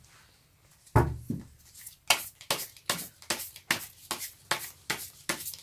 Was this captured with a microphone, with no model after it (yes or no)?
yes